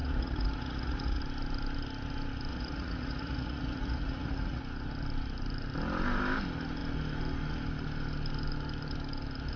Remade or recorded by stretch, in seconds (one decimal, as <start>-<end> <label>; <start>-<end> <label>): 0.0-1.2 remade; 1.2-2.5 recorded; 2.5-4.6 remade; 4.6-9.6 recorded